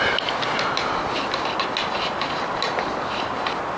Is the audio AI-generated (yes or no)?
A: no